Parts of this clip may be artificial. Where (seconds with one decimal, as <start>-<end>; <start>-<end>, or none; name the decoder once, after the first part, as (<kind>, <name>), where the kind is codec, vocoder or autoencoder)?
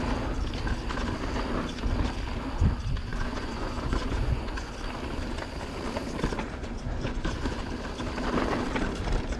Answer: 3.1-4.7 (vocoder, Vocos); 6.6-7.7